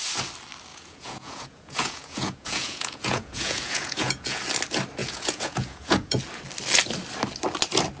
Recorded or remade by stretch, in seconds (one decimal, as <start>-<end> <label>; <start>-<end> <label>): 0.0-0.7 recorded; 0.7-4.4 remade; 4.4-5.0 recorded; 5.0-6.2 remade; 6.2-8.0 recorded